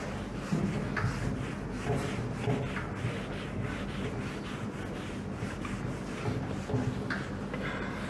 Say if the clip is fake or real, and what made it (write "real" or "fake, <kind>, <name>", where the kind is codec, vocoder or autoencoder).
real